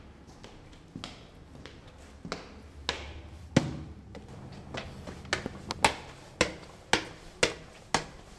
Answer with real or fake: real